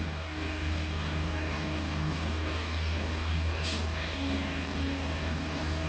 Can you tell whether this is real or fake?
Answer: fake